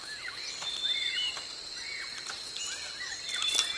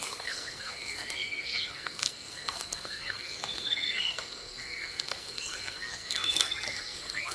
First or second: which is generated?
second